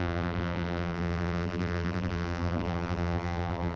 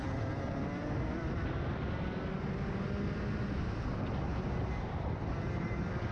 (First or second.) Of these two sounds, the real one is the second